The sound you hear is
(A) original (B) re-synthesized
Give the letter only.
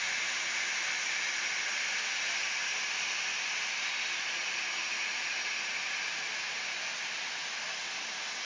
A